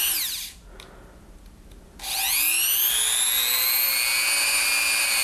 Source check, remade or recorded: recorded